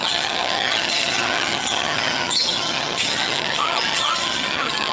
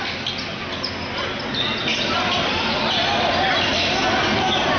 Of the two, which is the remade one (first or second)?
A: first